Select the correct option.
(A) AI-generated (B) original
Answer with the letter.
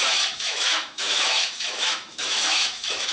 A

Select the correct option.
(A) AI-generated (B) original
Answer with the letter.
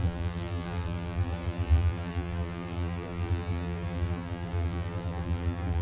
A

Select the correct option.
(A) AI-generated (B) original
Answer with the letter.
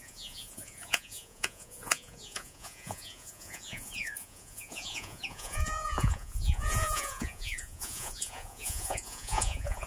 A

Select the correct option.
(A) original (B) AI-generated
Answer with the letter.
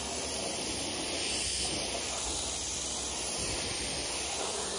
A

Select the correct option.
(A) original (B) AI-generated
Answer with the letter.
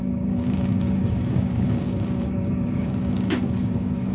B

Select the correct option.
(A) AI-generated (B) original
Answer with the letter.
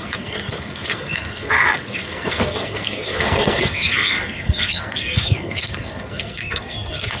A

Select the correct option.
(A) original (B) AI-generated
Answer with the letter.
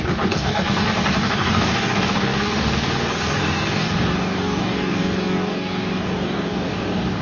B